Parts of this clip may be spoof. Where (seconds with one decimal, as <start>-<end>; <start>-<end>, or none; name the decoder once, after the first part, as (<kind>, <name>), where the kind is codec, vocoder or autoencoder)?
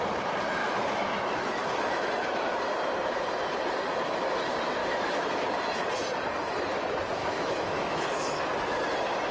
0.6-2.1 (autoencoder, DAC-VAE); 4.8-5.5; 7.2-8.4